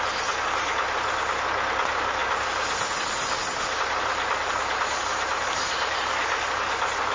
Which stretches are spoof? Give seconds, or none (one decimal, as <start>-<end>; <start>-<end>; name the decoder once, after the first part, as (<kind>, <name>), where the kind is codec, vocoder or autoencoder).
none